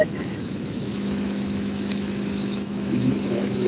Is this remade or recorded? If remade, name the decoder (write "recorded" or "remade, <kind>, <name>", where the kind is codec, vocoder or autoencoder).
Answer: remade, autoencoder, DAC-VAE